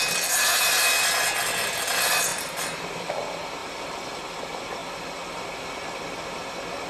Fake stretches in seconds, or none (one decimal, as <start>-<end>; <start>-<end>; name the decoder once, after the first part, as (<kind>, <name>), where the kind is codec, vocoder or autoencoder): 2.3-3.1 (vocoder, BigVGAN v2); 3.6-4.2